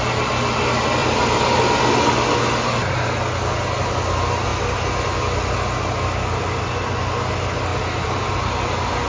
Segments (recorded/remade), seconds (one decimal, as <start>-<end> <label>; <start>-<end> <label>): 0.0-1.0 recorded; 1.0-1.8 remade; 1.8-7.7 recorded; 7.7-8.4 remade; 8.4-9.1 recorded